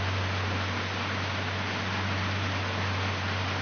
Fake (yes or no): no